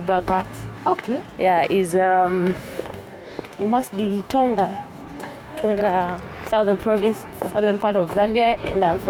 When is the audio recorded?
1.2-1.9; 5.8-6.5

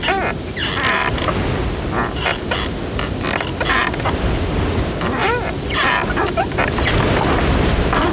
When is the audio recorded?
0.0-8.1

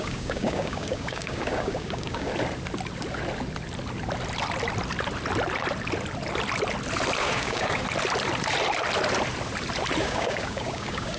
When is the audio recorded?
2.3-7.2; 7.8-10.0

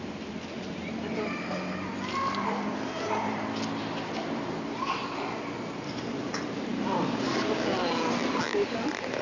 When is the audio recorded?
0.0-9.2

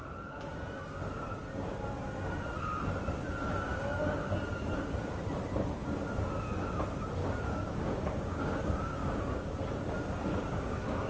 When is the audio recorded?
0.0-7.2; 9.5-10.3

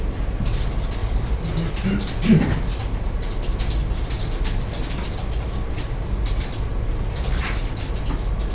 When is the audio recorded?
0.0-8.5